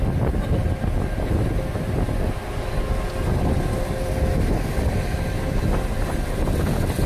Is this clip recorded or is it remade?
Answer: recorded